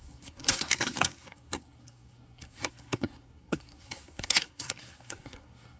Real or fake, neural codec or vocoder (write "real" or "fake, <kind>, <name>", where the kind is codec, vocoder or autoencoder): fake, codec, SNAC